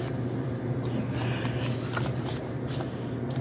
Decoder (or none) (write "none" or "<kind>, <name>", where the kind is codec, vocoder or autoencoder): none